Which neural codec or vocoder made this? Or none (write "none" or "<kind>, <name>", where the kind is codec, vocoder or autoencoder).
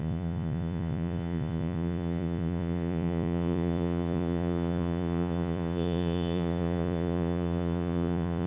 vocoder, Vocos